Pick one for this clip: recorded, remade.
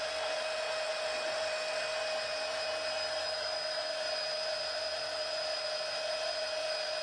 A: recorded